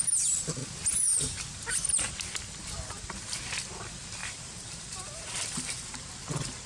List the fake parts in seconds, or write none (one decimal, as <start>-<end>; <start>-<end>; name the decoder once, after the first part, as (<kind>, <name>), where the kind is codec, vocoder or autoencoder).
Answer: 4.2-6.1 (vocoder, BigVGAN v2)